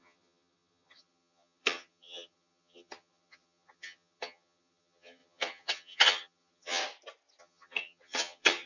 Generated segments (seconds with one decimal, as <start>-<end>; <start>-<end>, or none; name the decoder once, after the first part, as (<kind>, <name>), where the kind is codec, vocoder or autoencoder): 0.0-6.8 (vocoder, HiFi-GAN); 7.4-8.7